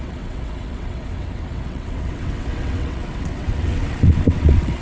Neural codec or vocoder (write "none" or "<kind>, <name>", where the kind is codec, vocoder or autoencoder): vocoder, WaveNeXt